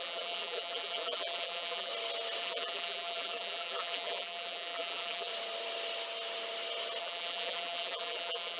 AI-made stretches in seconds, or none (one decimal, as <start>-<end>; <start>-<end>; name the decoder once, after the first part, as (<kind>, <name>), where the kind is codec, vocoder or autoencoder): 0.0-1.9 (vocoder, BigVGAN v2); 2.4-5.3; 7.0-8.6